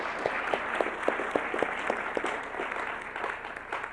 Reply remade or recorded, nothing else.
recorded